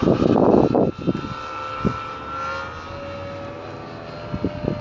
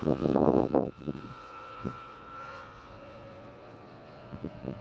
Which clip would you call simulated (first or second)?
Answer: second